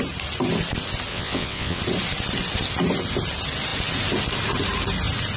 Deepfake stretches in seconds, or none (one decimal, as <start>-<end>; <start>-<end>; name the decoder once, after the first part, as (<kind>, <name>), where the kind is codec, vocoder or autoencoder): 1.1-1.8 (vocoder, WaveNeXt)